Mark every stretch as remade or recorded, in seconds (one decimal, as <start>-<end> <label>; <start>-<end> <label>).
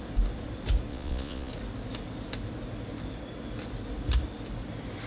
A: 0.0-0.9 recorded; 0.9-1.5 remade; 1.5-5.1 recorded